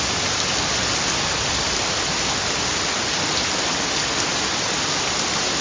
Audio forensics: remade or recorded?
recorded